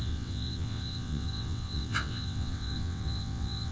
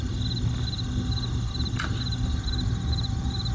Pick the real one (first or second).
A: second